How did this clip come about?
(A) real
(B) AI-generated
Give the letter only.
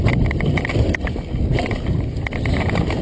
B